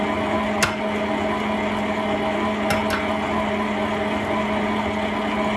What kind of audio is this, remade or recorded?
recorded